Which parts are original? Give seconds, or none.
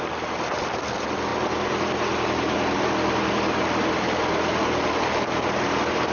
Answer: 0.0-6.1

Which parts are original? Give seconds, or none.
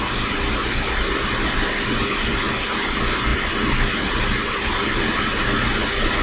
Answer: 0.0-3.3; 4.1-6.2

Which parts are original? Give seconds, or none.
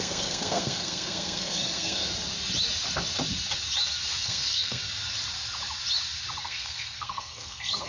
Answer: 2.1-4.2; 4.8-6.4